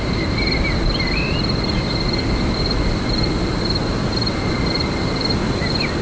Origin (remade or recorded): recorded